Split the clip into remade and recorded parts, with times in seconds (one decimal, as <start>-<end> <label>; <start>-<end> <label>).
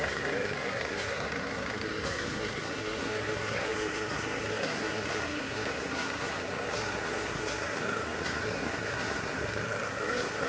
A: 0.0-10.5 remade